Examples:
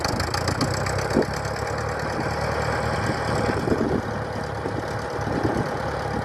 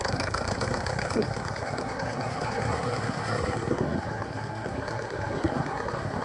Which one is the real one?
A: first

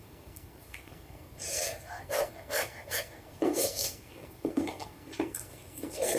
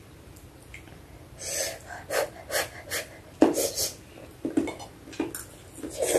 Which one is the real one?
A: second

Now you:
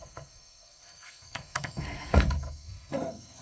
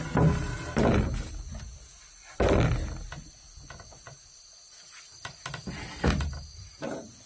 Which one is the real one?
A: second